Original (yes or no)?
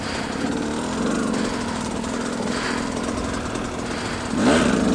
yes